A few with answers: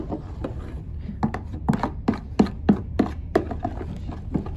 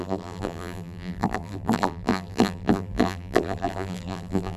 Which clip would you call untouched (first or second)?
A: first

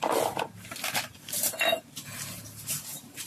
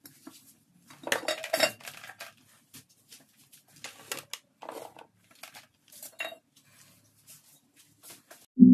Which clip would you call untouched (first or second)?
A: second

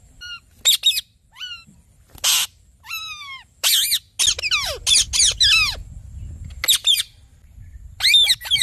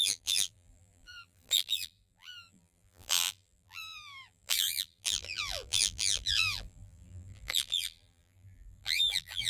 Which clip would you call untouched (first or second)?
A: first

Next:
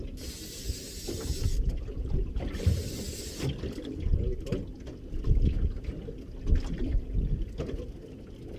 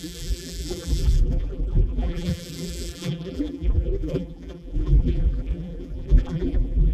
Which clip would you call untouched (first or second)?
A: first